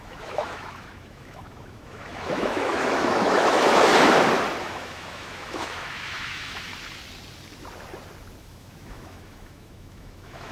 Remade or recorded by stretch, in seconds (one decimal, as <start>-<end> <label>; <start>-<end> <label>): 0.0-3.9 remade; 3.9-4.6 recorded; 4.6-6.7 remade; 6.7-8.4 recorded; 8.4-10.5 remade